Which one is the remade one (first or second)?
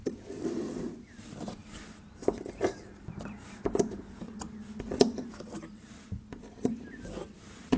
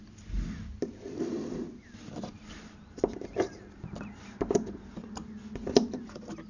first